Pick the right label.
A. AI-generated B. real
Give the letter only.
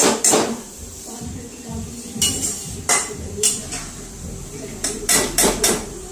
A